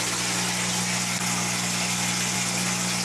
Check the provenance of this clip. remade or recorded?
recorded